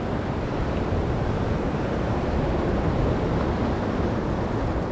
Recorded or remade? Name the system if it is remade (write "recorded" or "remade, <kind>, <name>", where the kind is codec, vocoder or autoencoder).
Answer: recorded